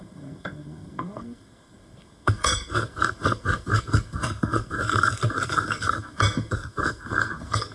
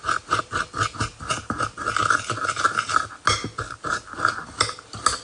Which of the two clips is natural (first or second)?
second